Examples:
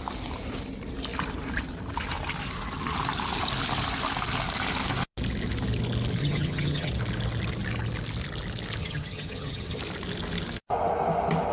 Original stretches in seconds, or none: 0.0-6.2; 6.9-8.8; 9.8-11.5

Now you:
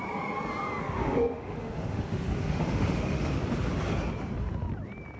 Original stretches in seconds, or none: 0.0-0.8; 3.3-5.2

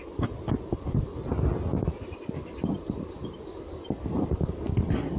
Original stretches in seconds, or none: 0.0-5.2

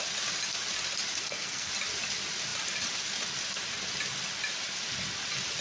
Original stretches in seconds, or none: 0.0-1.2; 1.7-5.6

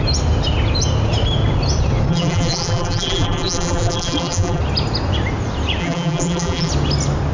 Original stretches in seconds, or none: 0.0-2.1; 4.6-5.8; 6.7-7.3